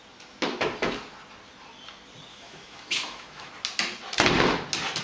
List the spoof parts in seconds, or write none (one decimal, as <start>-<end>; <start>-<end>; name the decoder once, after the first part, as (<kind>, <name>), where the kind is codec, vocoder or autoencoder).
2.3-3.5 (autoencoder, DAC-VAE)